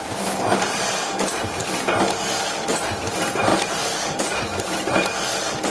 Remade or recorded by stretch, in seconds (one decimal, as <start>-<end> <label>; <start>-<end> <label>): 0.0-1.6 remade; 1.6-2.7 recorded; 2.7-5.7 remade